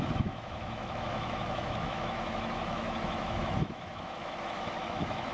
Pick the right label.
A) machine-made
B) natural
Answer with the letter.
A